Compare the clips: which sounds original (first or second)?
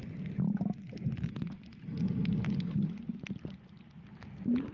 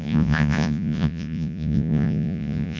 first